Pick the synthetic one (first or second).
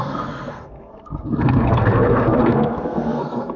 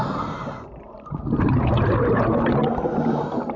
first